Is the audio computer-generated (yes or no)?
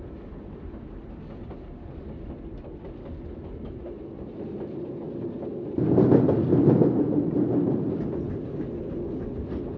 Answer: no